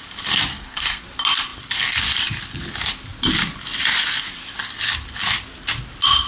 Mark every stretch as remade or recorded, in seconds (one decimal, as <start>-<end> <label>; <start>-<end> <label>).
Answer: 0.0-0.5 recorded; 0.5-1.0 remade; 1.0-6.3 recorded